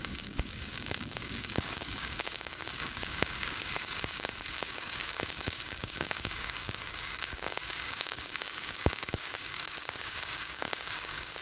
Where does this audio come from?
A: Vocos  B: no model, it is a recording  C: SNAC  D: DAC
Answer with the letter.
D